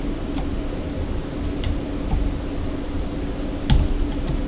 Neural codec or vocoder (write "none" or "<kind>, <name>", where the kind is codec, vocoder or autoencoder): none